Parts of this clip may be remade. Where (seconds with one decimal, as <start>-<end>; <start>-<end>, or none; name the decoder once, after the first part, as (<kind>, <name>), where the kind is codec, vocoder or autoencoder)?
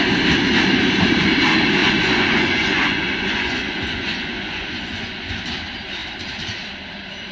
1.8-5.4 (vocoder, Vocos)